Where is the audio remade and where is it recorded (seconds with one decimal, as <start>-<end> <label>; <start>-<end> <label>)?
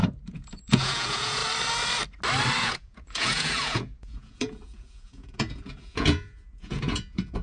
0.0-1.4 remade; 1.4-2.6 recorded; 2.6-7.4 remade